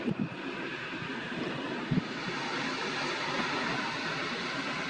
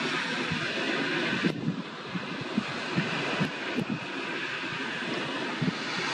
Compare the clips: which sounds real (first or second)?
second